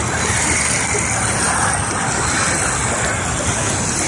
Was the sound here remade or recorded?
recorded